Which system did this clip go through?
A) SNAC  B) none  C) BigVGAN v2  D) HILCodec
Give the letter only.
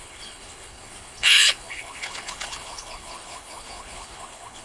D